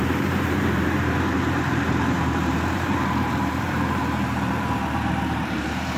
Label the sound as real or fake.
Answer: fake